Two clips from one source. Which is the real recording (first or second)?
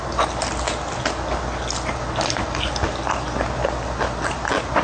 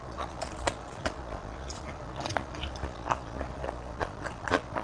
first